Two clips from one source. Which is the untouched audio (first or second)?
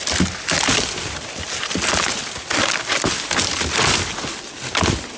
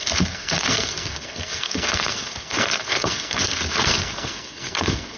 first